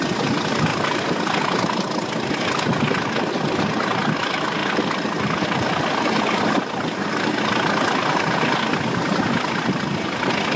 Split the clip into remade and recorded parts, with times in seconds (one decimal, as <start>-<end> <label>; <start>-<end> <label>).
0.0-10.6 recorded